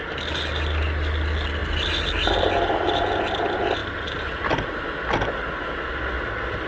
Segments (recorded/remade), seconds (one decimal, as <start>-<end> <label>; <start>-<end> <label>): 0.0-6.7 recorded